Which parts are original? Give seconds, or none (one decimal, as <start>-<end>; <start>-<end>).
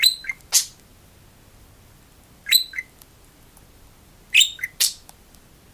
0.0-5.7